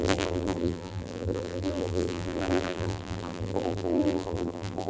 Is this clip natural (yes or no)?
no